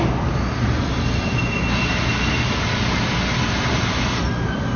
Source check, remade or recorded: recorded